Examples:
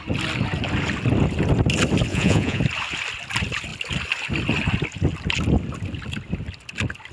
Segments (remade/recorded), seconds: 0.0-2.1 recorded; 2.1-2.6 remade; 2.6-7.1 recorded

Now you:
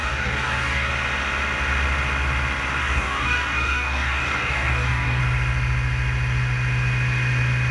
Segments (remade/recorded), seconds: 0.0-0.9 remade; 0.9-2.8 recorded; 2.8-5.2 remade; 5.2-7.7 recorded

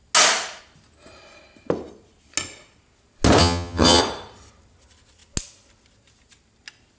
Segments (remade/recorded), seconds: 0.0-3.4 recorded; 3.4-4.0 remade; 4.0-7.0 recorded

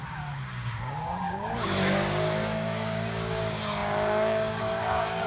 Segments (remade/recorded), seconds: 0.0-5.3 remade

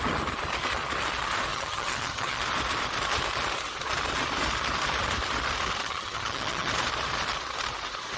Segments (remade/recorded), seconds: 0.0-1.5 recorded; 1.5-2.4 remade; 2.4-5.8 recorded; 5.8-6.7 remade; 6.7-8.2 recorded

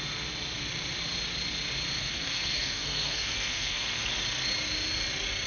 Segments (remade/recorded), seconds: 0.0-2.0 recorded; 2.0-4.1 remade; 4.1-5.5 recorded

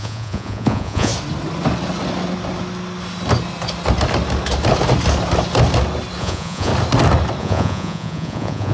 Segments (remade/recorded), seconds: 0.0-1.1 remade; 1.1-6.2 recorded; 6.2-6.7 remade; 6.7-7.4 recorded; 7.4-8.7 remade

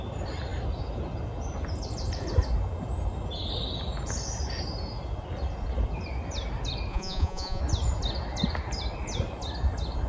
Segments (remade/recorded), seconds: 0.0-6.9 recorded; 6.9-7.6 remade; 7.6-10.1 recorded